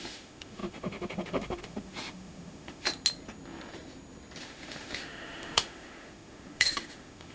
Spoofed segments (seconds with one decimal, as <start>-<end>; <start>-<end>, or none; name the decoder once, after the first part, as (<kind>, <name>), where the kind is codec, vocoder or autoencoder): 0.0-2.9 (autoencoder, DAC-VAE); 4.4-7.3